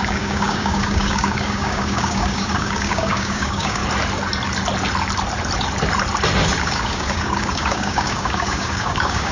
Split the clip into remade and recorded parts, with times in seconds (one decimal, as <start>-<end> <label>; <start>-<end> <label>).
0.0-3.8 remade; 3.8-6.6 recorded; 6.6-9.3 remade